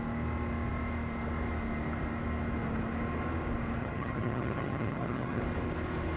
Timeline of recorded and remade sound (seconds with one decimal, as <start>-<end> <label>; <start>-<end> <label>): 0.0-3.8 recorded; 3.8-5.4 remade; 5.4-6.2 recorded

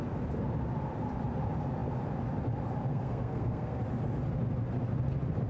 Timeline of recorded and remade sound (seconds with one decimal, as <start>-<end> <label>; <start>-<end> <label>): 0.0-2.9 recorded; 2.9-3.8 remade; 3.8-5.5 recorded

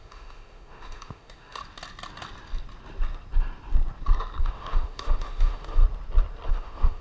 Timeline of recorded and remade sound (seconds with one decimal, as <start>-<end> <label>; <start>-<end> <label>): 0.0-1.6 remade; 1.6-4.4 recorded; 4.4-5.8 remade; 5.8-6.5 recorded; 6.5-7.0 remade